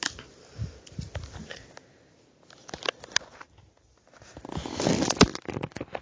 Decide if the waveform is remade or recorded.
recorded